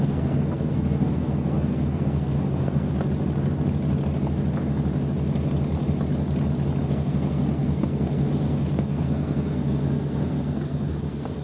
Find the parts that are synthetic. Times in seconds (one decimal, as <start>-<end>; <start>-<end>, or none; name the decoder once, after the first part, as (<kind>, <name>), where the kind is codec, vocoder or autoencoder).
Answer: 0.0-2.9 (codec, SNAC); 6.8-11.4